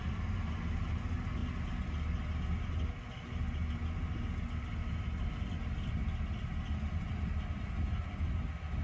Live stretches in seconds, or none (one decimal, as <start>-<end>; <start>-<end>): 0.0-8.8